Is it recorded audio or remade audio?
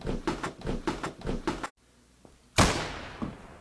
recorded